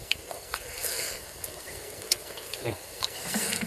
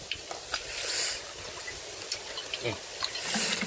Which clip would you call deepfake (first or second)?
first